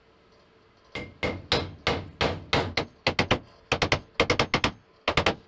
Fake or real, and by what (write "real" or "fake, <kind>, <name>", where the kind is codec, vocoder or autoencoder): real